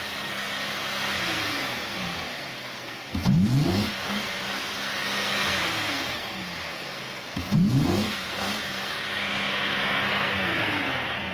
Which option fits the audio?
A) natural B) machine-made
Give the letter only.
B